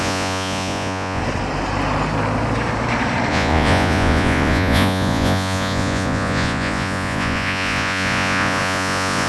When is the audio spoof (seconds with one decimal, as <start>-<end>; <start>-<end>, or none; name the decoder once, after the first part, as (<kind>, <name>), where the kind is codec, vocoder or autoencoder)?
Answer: 0.0-1.2 (vocoder, Vocos); 3.3-9.3